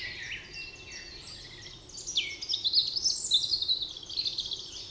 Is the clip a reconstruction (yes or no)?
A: no